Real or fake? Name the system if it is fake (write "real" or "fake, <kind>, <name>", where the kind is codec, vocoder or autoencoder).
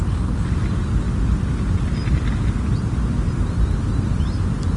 real